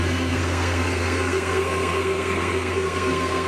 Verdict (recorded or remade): remade